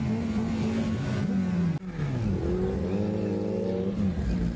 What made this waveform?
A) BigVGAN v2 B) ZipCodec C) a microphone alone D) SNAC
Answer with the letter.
C